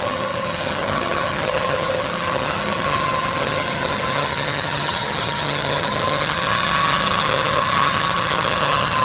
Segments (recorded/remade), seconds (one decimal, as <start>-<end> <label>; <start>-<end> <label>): 0.0-9.0 remade